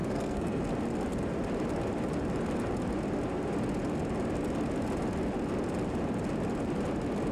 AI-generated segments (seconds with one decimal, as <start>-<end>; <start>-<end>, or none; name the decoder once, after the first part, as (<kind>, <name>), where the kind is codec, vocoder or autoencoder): 0.0-0.6 (codec, SNAC)